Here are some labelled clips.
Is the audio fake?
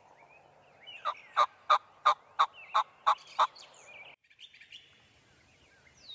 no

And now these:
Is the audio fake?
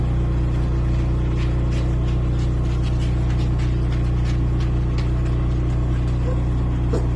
no